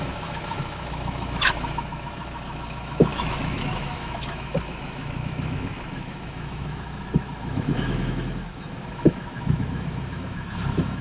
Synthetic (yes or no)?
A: yes